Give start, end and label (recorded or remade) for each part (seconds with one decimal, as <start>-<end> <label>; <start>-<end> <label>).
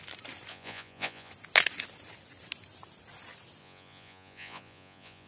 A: 0.0-0.5 recorded; 0.5-1.3 remade; 1.3-3.6 recorded; 3.6-5.3 remade